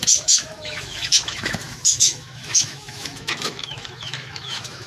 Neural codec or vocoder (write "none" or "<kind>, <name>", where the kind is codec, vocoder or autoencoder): autoencoder, DAC-VAE